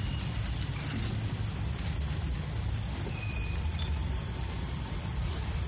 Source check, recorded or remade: recorded